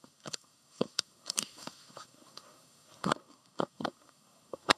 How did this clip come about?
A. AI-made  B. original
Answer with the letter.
A